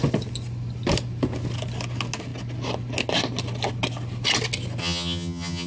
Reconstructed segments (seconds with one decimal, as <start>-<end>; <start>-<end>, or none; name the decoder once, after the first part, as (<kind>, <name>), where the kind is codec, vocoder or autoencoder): 4.8-5.7 (vocoder, HiFi-GAN)